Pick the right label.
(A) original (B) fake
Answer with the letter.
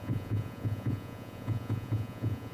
B